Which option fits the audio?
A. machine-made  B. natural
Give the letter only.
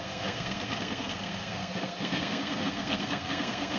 A